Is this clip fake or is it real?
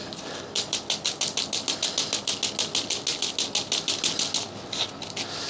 real